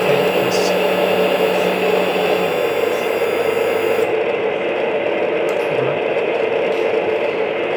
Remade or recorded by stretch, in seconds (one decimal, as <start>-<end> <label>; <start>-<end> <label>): 0.0-7.8 recorded